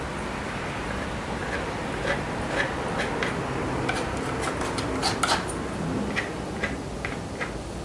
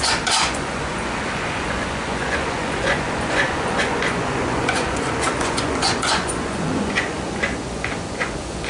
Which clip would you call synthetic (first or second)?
second